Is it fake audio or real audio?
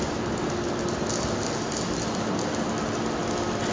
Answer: real